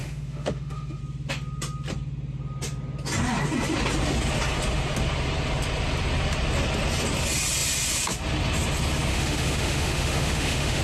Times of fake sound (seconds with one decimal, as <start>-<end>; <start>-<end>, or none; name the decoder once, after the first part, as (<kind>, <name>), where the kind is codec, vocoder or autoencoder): 0.0-1.0 (autoencoder, DAC-VAE); 9.1-10.8